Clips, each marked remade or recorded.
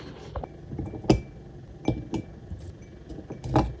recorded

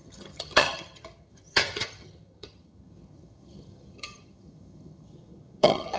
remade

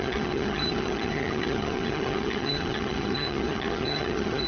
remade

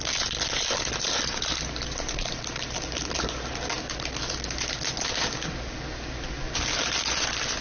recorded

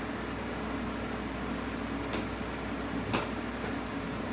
recorded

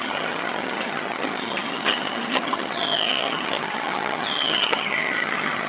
remade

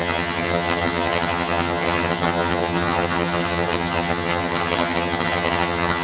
remade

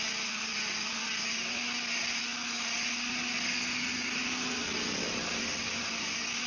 recorded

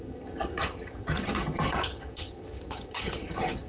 remade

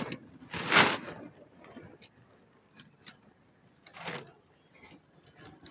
recorded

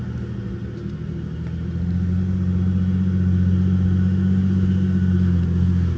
recorded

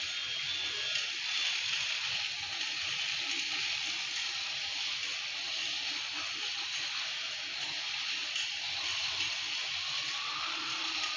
recorded